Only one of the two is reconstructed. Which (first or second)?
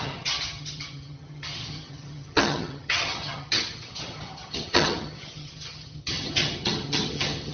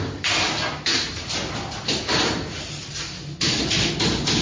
first